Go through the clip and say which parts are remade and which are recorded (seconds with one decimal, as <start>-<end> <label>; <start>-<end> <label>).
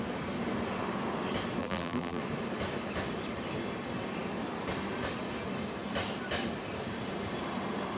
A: 0.0-1.6 recorded; 1.6-2.2 remade; 2.2-8.0 recorded